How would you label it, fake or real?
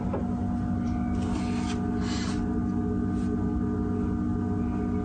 real